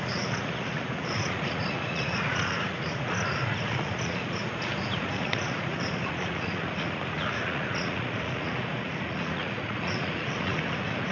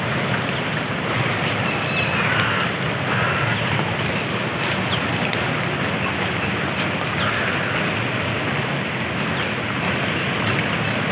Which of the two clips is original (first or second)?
second